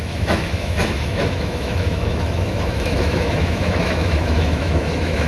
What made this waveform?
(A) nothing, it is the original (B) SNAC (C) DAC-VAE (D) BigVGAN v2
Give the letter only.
C